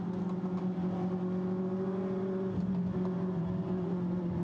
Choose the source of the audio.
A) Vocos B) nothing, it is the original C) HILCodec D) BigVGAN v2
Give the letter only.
B